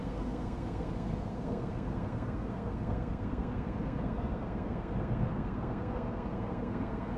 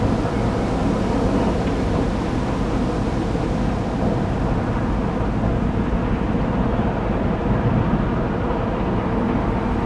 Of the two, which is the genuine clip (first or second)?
second